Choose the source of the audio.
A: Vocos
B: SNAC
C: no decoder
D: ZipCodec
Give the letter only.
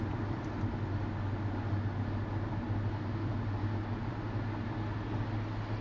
C